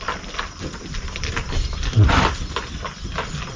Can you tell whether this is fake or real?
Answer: real